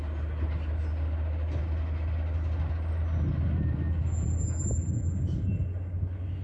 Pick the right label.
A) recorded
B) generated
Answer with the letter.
A